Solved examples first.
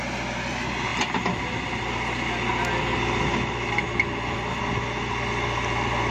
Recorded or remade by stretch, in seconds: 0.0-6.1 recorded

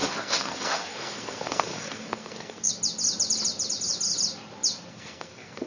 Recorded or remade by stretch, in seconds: 0.0-2.7 remade; 2.7-4.9 recorded; 4.9-5.7 remade

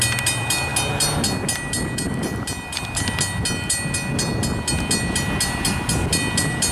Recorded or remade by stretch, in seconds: 0.0-6.7 recorded

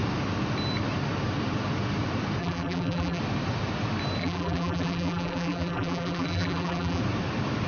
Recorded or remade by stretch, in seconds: 0.0-2.4 recorded; 2.4-3.2 remade; 3.2-4.2 recorded; 4.2-7.0 remade; 7.0-7.7 recorded